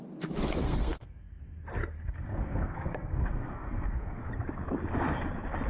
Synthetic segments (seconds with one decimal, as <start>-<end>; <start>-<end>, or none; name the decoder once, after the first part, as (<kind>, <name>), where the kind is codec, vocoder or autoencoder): 0.6-1.4 (codec, SNAC); 1.8-4.3